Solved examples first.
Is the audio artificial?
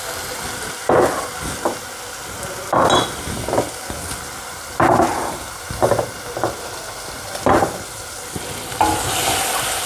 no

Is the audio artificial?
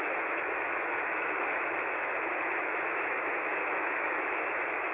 yes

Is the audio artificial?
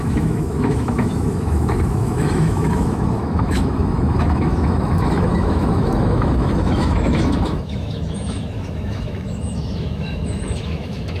yes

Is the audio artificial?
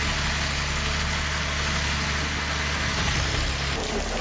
no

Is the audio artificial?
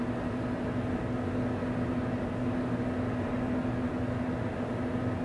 no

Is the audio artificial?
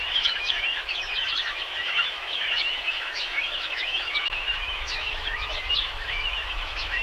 yes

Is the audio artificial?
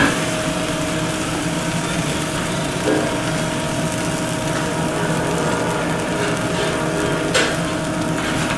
no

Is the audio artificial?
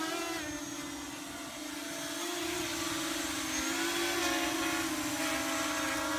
no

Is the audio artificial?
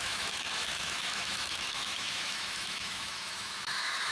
yes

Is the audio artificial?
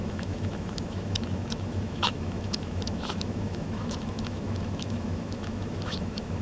yes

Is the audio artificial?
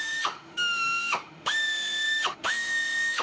yes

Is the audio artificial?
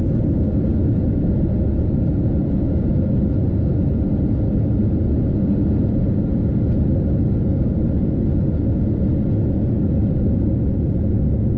no